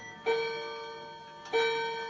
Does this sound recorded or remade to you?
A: recorded